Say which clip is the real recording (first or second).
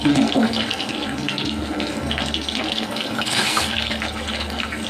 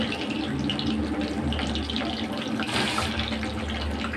second